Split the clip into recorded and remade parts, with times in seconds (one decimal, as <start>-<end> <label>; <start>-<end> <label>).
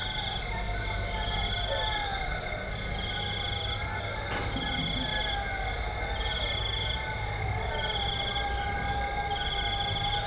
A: 0.0-10.3 recorded